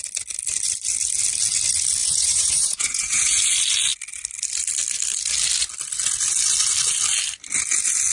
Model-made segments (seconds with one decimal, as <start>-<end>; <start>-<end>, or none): 2.0-3.4

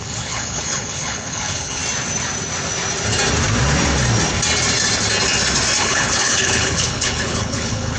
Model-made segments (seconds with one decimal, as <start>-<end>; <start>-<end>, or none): 0.0-1.8; 5.8-8.0

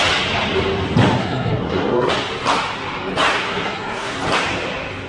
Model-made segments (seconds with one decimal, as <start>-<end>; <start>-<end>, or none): 1.2-2.1; 3.3-4.1

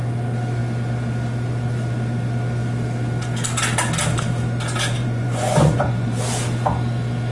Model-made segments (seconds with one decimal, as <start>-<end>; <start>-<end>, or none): 5.0-6.2

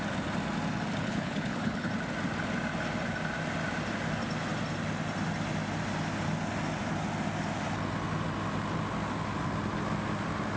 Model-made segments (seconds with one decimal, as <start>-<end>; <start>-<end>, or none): 1.0-1.9

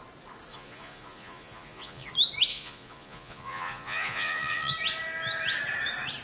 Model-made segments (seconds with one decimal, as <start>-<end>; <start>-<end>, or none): 0.5-2.1; 2.5-4.7

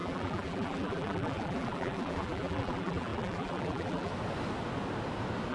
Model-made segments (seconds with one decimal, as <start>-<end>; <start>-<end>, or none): 0.0-4.1